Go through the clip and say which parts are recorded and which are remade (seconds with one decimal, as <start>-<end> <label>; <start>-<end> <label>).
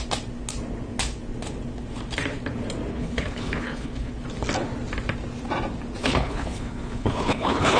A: 0.0-2.9 recorded; 2.9-4.1 remade; 4.1-6.0 recorded; 6.0-7.8 remade